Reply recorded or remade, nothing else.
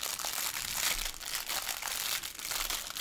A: recorded